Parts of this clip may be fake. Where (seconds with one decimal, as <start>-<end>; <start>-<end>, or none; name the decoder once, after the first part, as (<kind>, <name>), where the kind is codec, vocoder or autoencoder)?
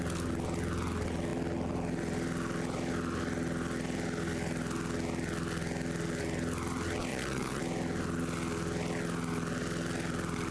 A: 7.1-7.6 (vocoder, Vocos)